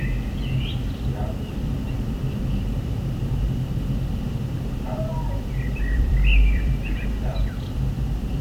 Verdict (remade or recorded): remade